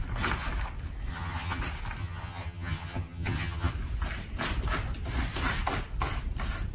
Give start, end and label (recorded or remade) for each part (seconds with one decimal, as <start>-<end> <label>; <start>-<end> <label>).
0.0-1.1 recorded; 1.1-1.6 remade; 1.6-2.0 recorded; 2.0-3.7 remade; 3.7-6.7 recorded